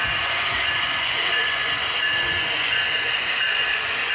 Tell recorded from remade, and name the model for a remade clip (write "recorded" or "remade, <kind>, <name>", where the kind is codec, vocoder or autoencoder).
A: remade, vocoder, Vocos